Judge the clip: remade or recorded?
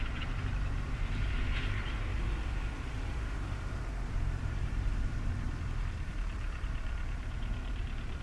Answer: remade